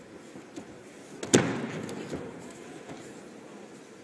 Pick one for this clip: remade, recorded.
recorded